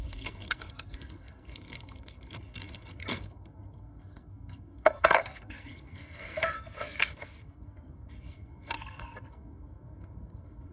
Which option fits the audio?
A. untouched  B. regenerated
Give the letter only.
B